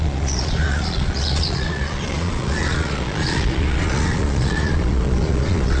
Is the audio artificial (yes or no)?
yes